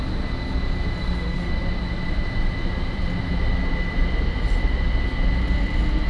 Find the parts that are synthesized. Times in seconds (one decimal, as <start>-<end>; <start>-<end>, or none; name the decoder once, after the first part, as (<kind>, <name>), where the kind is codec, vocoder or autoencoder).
1.0-1.5 (codec, SNAC)